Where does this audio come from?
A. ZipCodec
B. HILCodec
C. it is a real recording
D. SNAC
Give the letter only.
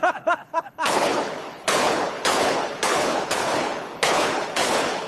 B